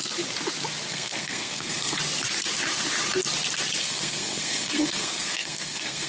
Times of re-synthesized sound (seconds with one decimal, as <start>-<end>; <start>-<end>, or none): 0.9-2.0; 3.8-6.1